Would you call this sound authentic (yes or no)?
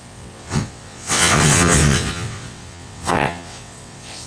no